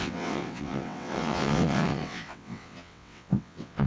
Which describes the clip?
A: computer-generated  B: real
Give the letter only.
A